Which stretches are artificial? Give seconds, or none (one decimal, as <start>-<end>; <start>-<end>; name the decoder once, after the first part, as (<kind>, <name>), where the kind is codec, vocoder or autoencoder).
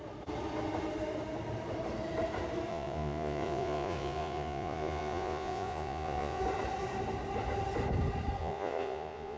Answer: 2.7-6.4 (vocoder, Vocos); 8.4-9.4